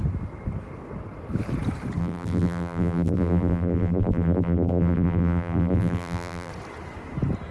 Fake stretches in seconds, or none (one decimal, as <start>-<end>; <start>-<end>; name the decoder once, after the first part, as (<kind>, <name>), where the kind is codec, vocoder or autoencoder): 2.0-6.5 (vocoder, BigVGAN v2)